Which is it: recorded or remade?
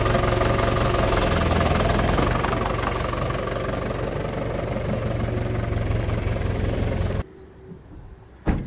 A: recorded